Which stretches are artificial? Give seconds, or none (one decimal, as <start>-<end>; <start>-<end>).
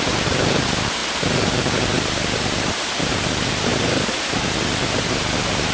0.0-5.7